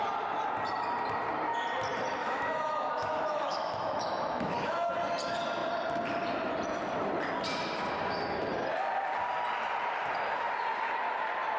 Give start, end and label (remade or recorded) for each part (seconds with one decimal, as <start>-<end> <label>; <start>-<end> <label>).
0.0-2.2 recorded; 2.2-4.9 remade; 4.9-11.6 recorded